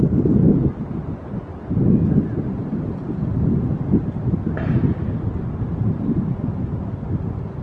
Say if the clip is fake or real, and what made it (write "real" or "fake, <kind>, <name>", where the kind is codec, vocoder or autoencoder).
real